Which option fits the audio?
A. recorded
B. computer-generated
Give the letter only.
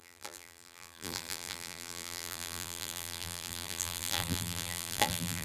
B